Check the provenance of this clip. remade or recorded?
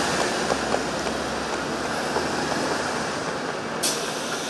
recorded